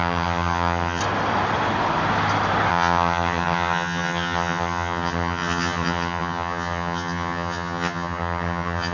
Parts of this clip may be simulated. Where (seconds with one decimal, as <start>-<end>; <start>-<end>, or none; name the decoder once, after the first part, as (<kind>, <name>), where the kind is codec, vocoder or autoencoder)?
0.0-1.0 (vocoder, HiFi-GAN); 2.7-8.9